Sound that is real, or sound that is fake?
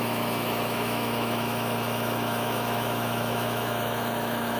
fake